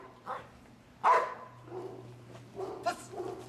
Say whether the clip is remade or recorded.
recorded